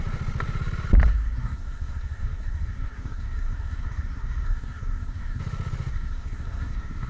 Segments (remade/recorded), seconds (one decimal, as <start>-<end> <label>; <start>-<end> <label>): 0.0-1.1 recorded; 1.1-5.4 remade; 5.4-5.9 recorded; 5.9-7.1 remade